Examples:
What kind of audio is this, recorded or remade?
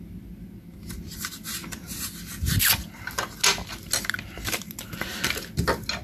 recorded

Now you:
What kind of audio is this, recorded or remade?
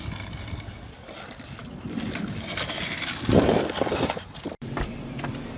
remade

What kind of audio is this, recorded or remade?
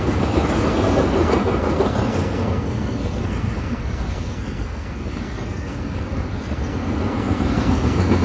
remade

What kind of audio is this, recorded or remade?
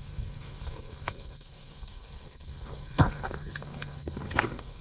remade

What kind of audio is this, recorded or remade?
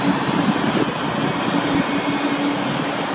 recorded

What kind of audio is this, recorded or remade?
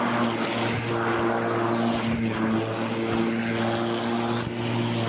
recorded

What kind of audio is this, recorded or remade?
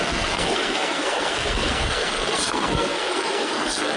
remade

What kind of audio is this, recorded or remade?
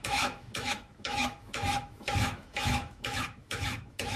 remade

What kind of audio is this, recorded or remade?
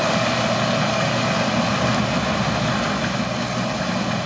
recorded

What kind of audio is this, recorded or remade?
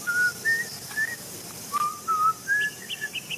recorded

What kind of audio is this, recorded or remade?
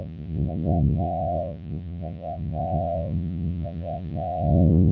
remade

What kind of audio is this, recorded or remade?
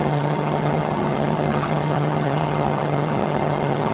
remade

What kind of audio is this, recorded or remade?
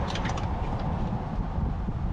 recorded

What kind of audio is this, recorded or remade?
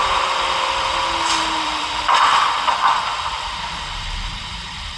remade